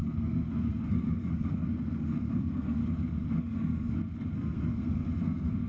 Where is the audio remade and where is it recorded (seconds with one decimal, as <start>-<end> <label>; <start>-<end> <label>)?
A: 0.0-2.8 remade; 2.8-3.4 recorded; 3.4-5.7 remade